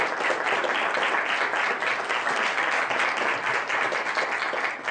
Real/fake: real